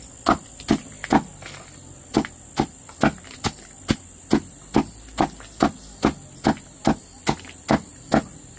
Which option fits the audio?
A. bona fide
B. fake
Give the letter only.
A